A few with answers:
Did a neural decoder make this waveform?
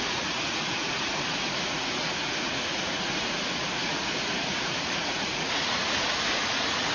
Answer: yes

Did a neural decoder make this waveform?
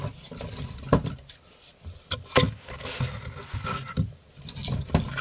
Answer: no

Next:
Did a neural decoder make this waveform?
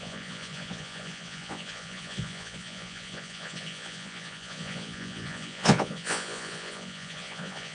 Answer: yes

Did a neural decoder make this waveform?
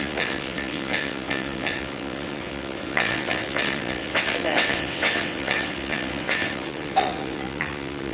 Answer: yes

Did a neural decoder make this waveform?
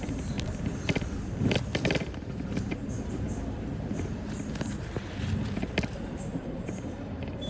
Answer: yes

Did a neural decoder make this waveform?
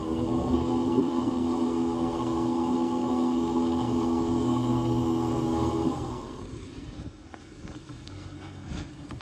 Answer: yes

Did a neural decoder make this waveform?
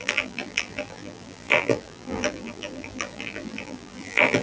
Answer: yes